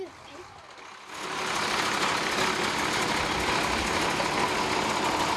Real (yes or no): yes